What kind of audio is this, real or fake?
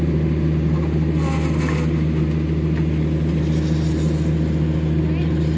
real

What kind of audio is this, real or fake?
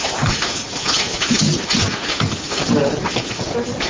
real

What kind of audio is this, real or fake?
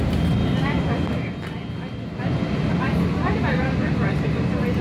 real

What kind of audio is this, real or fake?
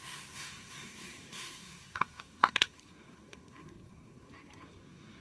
fake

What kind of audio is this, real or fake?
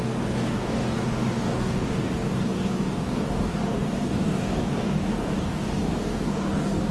fake